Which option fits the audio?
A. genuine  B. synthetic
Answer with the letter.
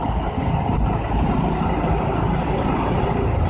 A